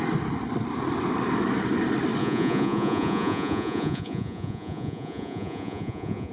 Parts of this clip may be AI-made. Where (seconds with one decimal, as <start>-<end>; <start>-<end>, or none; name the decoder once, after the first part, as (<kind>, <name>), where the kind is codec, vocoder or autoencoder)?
2.2-6.3 (vocoder, Vocos)